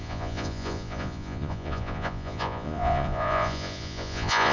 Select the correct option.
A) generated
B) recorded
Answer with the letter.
A